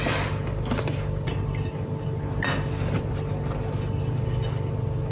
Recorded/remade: recorded